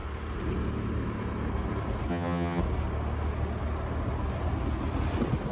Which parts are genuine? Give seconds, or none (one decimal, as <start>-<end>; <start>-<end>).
0.0-2.1; 2.6-5.5